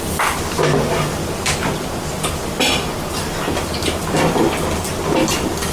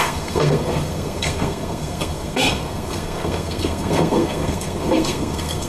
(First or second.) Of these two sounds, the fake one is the second